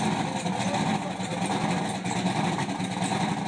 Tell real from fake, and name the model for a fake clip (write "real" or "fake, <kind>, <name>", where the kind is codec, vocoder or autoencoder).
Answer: real